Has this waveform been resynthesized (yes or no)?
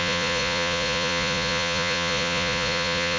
yes